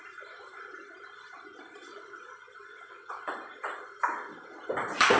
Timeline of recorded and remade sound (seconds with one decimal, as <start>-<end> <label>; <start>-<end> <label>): 0.0-2.7 recorded; 2.7-3.3 remade; 3.3-5.2 recorded